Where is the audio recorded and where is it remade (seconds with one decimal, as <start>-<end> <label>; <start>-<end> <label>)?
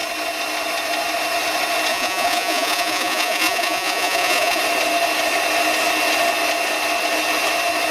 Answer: 0.0-1.9 recorded; 1.9-4.6 remade; 4.6-7.9 recorded